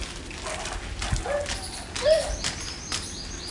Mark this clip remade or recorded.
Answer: recorded